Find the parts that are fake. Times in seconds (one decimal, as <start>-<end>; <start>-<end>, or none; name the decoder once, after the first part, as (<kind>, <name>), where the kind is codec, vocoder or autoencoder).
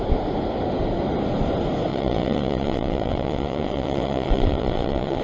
1.9-5.2 (vocoder, WaveNeXt)